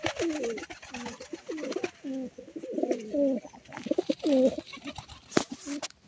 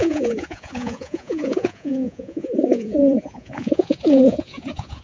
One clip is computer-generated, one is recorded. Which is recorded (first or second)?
first